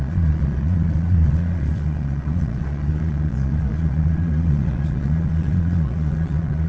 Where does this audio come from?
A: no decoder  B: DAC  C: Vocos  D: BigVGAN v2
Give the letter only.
C